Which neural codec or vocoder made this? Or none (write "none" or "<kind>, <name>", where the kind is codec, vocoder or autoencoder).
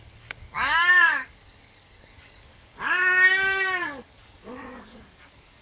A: codec, DAC